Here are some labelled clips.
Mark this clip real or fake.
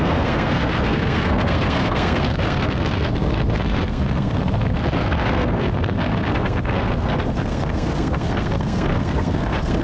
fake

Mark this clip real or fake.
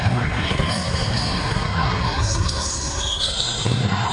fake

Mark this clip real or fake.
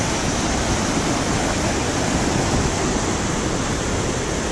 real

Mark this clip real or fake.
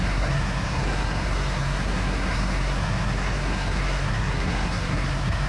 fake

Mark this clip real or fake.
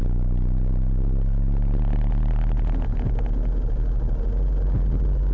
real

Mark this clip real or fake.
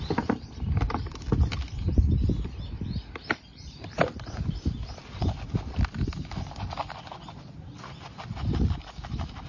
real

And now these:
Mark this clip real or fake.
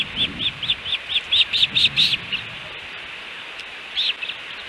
real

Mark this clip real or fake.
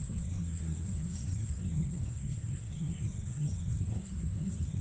fake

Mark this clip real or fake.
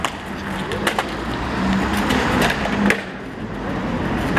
real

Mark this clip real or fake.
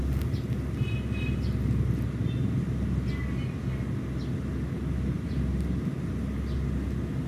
real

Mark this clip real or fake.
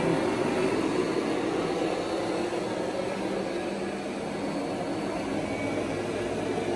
real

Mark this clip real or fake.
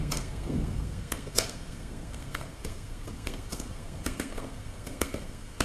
fake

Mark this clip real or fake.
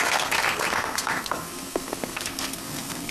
fake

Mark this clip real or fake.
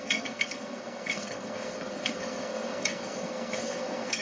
fake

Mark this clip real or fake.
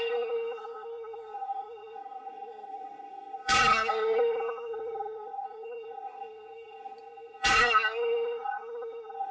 fake